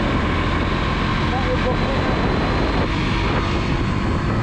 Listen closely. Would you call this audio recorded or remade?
recorded